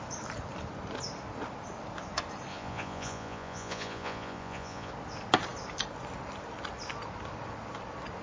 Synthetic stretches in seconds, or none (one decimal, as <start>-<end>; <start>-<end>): 2.5-4.9